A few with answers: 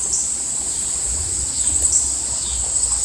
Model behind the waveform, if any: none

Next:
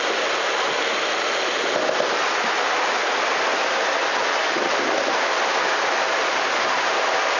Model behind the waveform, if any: none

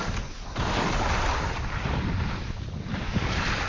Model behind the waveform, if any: none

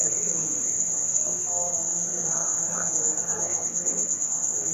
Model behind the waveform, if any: codec, SNAC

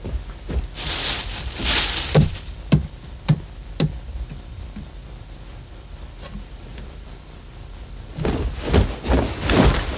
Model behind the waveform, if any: none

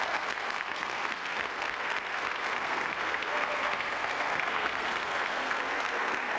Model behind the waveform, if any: codec, SNAC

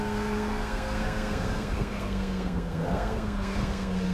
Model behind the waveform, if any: codec, SNAC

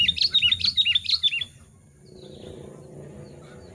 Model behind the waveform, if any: none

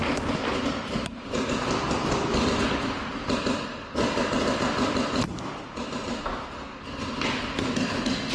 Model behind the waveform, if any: none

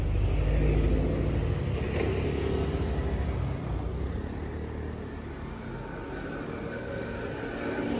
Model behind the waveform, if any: none